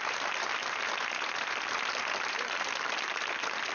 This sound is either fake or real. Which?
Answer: fake